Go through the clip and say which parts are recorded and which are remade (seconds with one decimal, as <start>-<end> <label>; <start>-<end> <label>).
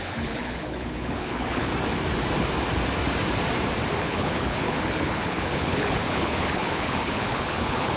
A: 0.0-1.7 remade; 1.7-4.0 recorded; 4.0-8.0 remade